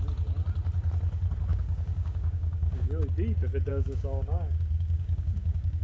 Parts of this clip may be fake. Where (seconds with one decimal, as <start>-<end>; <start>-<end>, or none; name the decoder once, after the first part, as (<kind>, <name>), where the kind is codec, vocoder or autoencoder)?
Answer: 1.5-3.0 (codec, DAC); 3.7-5.8